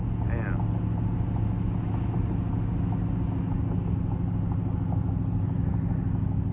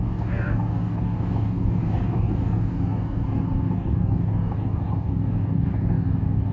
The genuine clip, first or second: first